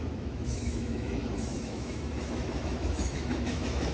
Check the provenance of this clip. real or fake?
fake